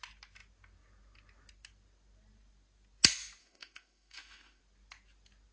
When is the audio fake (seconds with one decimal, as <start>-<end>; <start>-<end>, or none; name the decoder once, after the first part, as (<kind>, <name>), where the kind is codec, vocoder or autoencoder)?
3.4-4.6 (autoencoder, DAC-VAE)

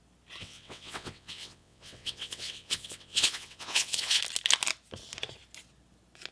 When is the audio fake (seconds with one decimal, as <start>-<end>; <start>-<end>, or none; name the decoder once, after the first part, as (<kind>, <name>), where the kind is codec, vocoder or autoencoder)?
0.4-4.2 (vocoder, WaveNeXt)

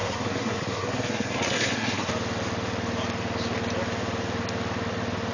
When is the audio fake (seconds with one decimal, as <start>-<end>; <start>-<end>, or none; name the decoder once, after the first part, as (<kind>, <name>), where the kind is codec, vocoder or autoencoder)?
0.0-2.1 (codec, SNAC)

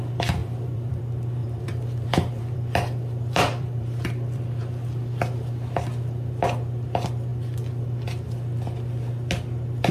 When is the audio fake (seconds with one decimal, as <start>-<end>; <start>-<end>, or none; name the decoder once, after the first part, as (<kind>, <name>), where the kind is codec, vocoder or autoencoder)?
0.4-1.0 (vocoder, BigVGAN v2); 1.4-4.6; 7.3-8.3

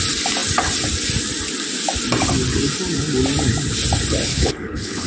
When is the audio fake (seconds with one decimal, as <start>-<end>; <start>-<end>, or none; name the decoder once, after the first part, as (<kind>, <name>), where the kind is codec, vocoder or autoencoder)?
4.3-5.1 (codec, HILCodec)

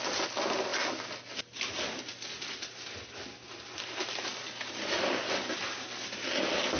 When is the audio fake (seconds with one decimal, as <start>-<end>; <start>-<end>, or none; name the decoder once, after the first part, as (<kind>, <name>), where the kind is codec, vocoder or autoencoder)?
none

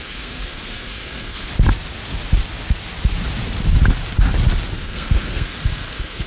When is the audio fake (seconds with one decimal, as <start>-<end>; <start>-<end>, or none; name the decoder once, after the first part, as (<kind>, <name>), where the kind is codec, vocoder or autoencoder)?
0.0-1.5 (codec, SNAC); 4.7-6.3